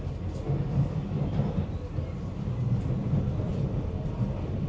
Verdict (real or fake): real